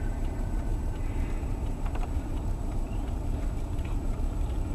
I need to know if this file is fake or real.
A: fake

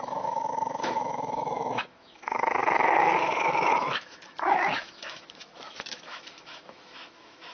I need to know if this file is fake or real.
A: fake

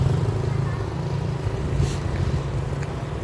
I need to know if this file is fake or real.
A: real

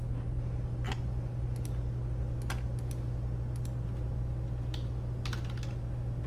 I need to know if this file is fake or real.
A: real